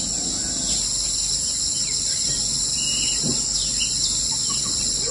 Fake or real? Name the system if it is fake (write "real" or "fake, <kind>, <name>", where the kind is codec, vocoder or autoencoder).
real